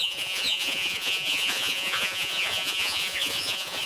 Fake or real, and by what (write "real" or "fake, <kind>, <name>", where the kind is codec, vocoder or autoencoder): fake, vocoder, Vocos